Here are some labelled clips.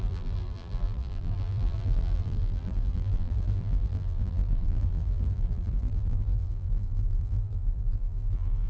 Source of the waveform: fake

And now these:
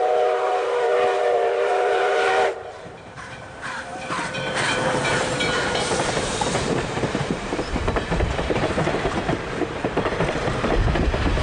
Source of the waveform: fake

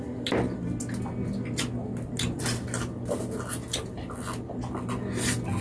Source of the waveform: real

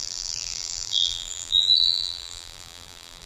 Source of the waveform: fake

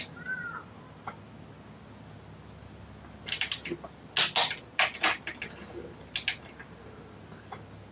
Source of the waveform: real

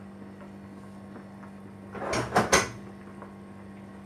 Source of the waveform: real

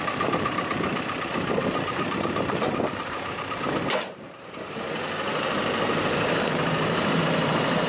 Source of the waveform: fake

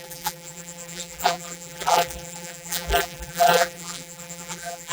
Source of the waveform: fake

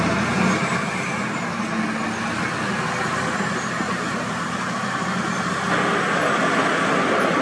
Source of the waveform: real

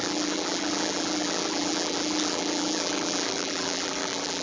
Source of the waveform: fake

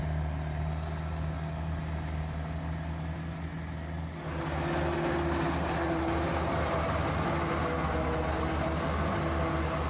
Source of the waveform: real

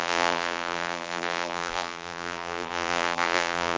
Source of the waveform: fake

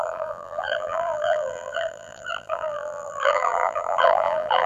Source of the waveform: fake